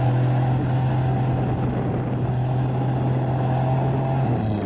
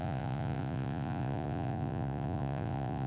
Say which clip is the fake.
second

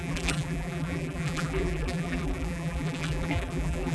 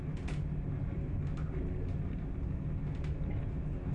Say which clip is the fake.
first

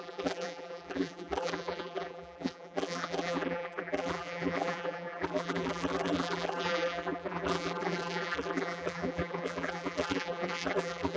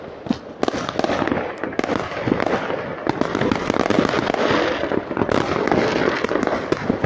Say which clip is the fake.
first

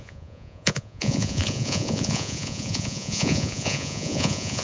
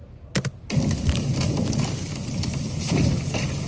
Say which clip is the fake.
first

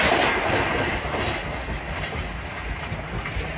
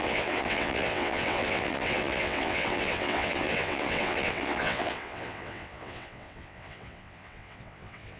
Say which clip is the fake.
second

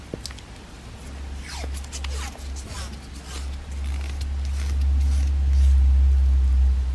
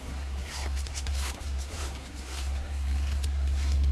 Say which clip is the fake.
second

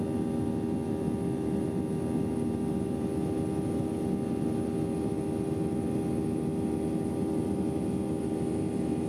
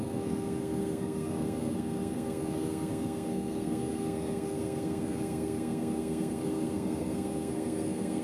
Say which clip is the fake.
second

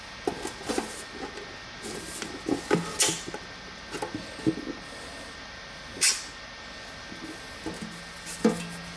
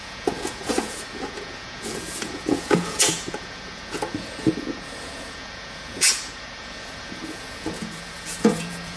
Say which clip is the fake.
second